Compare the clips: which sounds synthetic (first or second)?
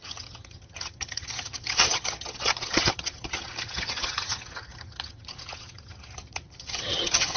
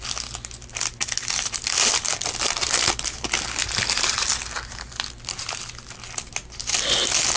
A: first